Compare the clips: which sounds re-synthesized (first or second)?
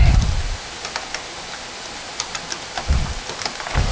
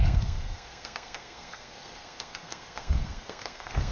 second